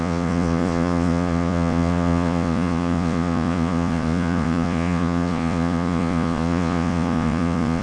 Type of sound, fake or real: fake